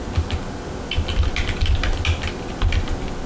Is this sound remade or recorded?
recorded